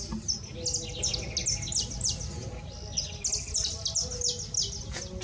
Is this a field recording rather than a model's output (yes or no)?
yes